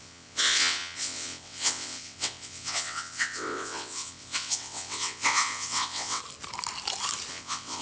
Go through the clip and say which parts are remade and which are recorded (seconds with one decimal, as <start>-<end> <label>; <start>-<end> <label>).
0.0-6.2 remade; 6.2-7.3 recorded; 7.3-7.8 remade

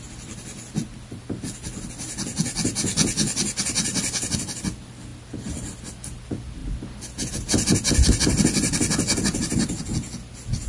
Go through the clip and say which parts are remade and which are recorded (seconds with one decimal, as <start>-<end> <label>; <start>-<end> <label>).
0.0-10.7 recorded

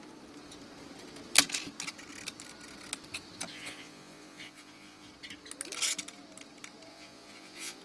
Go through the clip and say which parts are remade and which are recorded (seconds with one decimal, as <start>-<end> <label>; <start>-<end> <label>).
0.0-3.5 recorded; 3.5-5.1 remade; 5.1-6.9 recorded; 6.9-7.8 remade